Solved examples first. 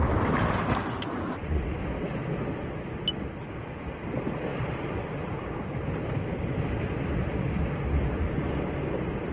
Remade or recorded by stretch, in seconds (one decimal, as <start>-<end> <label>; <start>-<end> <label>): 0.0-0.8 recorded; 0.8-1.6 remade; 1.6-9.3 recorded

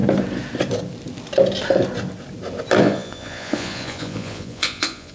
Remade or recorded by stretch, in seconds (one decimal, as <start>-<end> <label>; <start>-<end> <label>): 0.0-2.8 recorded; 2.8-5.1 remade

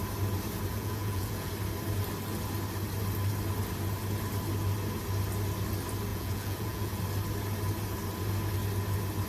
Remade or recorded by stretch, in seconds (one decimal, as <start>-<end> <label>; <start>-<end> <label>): 0.0-0.7 recorded; 0.7-1.5 remade; 1.5-6.1 recorded; 6.1-7.0 remade; 7.0-9.3 recorded